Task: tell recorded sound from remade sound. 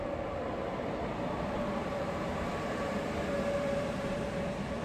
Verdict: remade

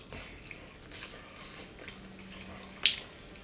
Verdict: recorded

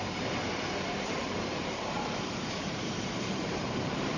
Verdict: remade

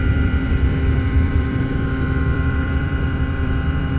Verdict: remade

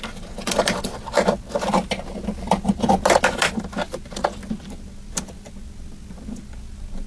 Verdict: recorded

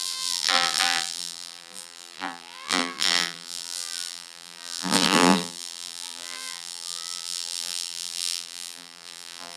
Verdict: remade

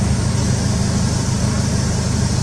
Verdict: recorded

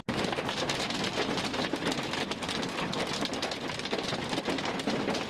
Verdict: recorded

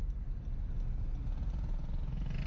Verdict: recorded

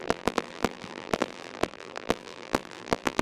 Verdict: remade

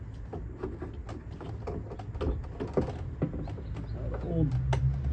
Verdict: recorded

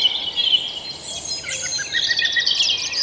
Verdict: recorded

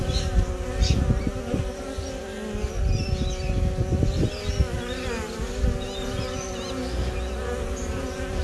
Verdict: recorded